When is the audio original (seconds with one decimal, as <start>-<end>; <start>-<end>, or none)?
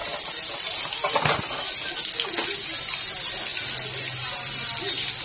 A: 0.0-5.2